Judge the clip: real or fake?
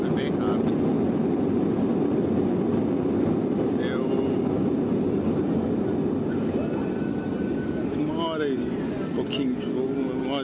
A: real